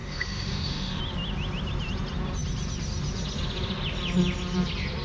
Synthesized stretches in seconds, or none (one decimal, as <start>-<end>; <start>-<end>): 0.0-1.0